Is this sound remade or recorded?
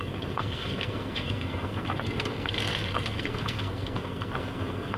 remade